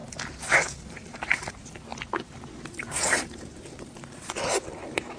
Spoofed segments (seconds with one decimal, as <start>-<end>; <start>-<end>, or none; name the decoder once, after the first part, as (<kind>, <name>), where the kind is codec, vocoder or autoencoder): 0.9-1.9 (vocoder, BigVGAN v2); 2.7-5.2